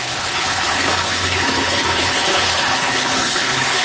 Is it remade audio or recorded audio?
remade